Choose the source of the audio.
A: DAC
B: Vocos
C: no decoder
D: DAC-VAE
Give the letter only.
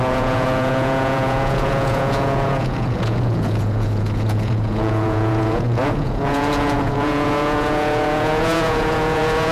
B